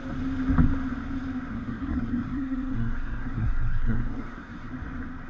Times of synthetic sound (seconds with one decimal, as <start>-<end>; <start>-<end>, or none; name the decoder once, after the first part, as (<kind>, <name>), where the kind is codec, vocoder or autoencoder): 1.5-4.7 (codec, SNAC)